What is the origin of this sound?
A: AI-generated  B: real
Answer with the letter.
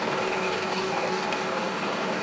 A